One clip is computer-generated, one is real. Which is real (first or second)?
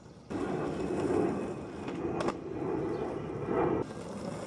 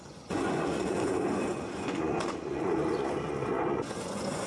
first